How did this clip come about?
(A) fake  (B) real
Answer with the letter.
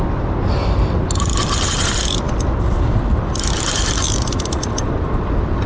B